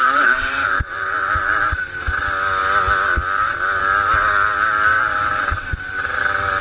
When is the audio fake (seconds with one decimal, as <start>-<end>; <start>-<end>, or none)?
0.0-1.7; 5.0-5.9